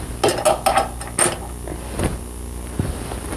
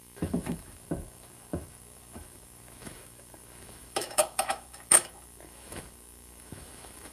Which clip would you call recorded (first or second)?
first